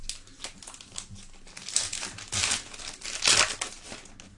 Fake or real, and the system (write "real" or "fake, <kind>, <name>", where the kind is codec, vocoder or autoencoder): real